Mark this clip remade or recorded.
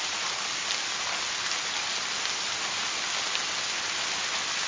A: recorded